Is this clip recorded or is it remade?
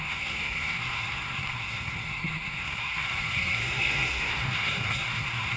remade